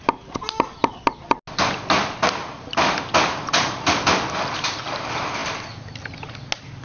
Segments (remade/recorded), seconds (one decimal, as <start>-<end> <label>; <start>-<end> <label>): 0.0-6.8 recorded